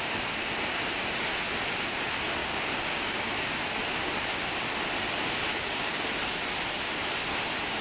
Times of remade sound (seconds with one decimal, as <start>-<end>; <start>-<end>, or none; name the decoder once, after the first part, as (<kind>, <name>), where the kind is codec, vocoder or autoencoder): 2.4-3.3 (codec, DAC); 5.5-6.0